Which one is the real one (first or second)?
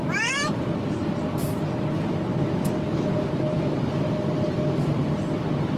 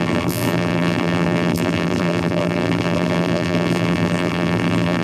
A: first